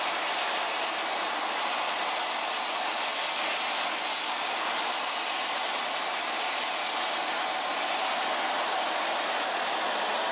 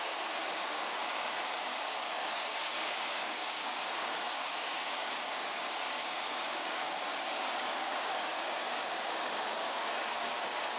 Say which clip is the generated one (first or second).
second